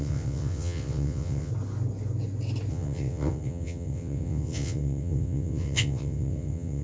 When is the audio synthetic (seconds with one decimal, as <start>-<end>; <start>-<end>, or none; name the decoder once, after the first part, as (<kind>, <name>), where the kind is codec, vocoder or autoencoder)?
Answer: 0.0-1.5 (vocoder, WaveNeXt); 2.7-6.8